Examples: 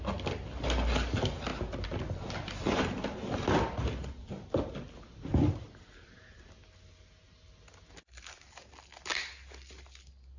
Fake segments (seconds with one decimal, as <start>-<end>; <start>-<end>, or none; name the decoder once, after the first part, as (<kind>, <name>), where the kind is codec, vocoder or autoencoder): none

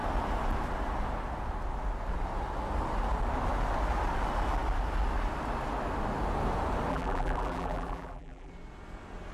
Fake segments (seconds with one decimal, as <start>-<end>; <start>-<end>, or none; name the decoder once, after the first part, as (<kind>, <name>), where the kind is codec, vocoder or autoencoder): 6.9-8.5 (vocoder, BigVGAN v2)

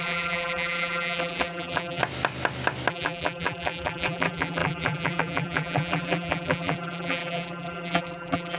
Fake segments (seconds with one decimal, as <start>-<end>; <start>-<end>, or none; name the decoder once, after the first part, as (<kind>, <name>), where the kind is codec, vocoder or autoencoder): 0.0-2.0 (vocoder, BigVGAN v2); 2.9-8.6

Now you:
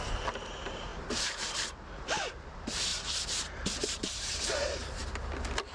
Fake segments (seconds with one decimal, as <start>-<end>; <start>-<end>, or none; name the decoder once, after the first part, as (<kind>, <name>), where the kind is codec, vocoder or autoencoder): 0.0-5.0 (vocoder, BigVGAN v2)